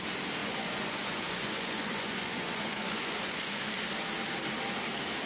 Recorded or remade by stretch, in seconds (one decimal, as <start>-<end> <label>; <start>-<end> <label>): 0.0-0.4 recorded; 0.4-3.6 remade; 3.6-5.3 recorded